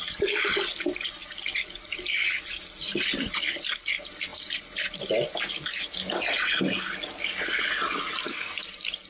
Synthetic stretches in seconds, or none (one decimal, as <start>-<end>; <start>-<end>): none